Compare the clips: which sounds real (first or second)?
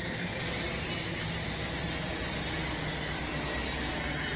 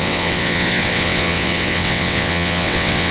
first